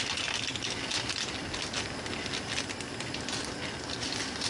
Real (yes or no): yes